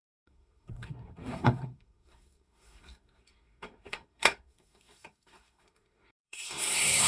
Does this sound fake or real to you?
fake